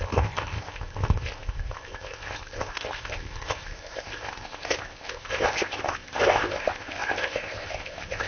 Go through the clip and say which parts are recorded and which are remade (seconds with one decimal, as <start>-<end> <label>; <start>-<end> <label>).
0.0-8.3 remade